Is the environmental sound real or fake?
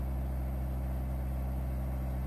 real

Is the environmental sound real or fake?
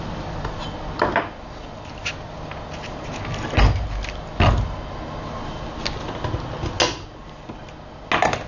real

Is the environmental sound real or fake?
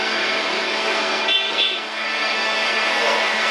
fake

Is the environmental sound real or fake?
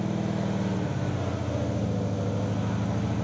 real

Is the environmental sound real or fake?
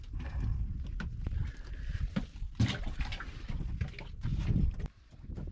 real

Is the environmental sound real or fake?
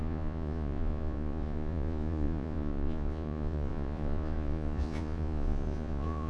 fake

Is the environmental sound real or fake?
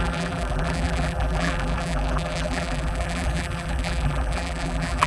fake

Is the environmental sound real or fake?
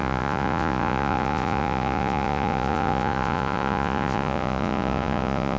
fake